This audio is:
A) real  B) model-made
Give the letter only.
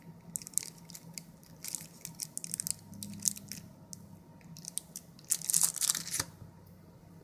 A